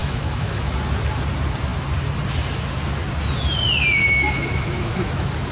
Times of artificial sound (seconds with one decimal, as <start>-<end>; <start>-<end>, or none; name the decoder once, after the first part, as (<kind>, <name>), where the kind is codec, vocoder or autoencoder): 0.0-0.7 (autoencoder, DAC-VAE); 4.0-5.5